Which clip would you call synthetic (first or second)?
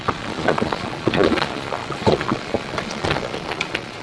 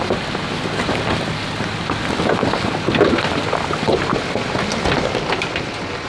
first